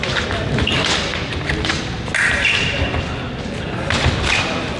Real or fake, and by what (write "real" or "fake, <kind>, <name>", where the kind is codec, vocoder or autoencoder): real